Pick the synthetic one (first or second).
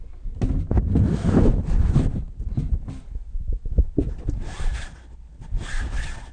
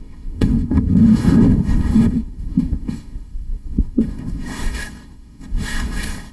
second